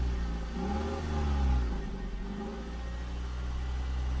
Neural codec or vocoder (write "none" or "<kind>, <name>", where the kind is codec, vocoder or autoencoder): none